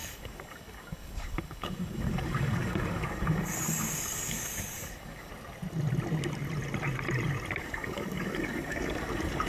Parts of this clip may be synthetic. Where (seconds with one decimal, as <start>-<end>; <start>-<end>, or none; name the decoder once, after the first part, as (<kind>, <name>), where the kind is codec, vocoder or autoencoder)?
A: 0.0-5.3 (codec, DAC); 7.6-9.5